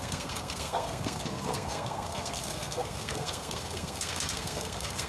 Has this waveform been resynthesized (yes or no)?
yes